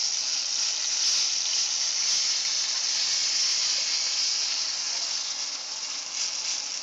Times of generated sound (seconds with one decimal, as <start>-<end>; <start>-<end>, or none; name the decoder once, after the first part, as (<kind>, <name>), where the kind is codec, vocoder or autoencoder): 4.7-6.0 (vocoder, Vocos)